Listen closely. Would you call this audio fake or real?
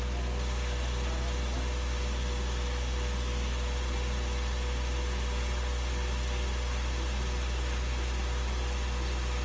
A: real